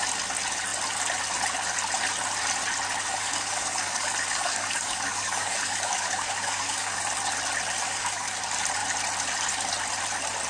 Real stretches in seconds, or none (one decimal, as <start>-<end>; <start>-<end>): 0.0-3.1; 7.0-7.8; 8.4-10.5